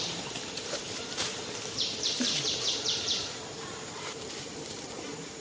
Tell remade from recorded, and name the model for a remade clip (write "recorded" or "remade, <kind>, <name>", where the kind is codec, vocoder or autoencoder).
remade, vocoder, BigVGAN v2